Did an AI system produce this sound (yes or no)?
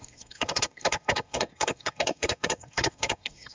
yes